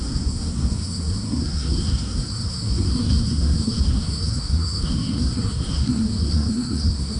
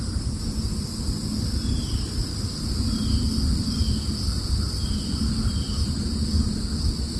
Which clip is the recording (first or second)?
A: second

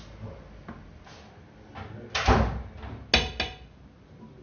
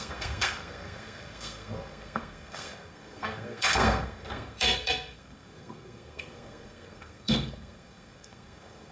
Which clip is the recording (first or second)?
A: first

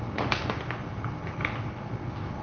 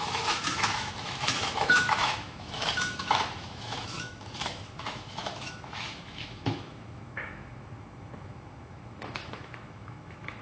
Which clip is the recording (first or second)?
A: first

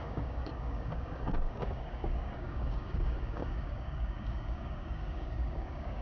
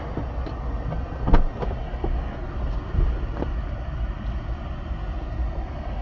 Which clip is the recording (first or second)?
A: second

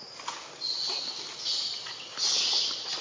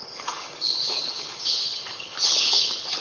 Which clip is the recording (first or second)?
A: first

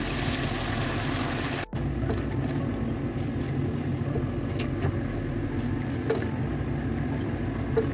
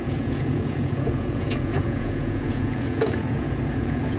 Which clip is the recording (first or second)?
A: first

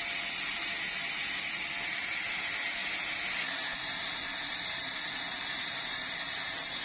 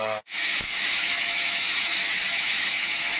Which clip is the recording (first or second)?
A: first